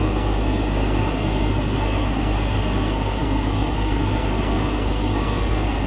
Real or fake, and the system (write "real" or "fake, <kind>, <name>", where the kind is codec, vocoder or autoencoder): fake, codec, SNAC